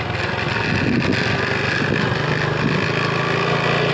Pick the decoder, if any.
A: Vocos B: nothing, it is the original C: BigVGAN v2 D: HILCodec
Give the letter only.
B